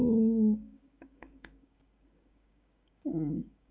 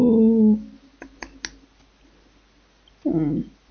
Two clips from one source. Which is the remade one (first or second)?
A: first